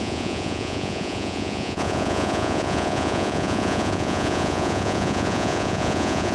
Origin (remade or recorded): remade